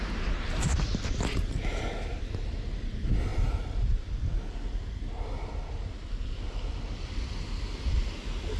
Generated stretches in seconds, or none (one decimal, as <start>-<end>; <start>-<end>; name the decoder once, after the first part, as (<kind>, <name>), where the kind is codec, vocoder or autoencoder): none